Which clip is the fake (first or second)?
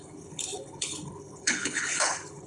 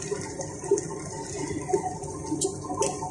first